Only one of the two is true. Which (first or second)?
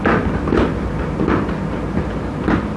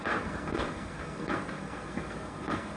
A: first